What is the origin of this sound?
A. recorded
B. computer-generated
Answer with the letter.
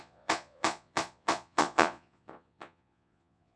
B